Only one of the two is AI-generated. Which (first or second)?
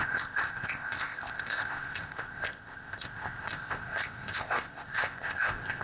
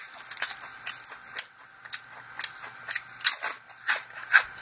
first